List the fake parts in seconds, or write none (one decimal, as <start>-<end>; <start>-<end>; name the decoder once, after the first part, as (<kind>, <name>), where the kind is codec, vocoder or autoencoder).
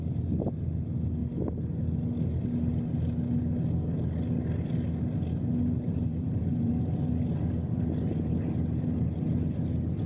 6.1-7.1 (vocoder, BigVGAN v2)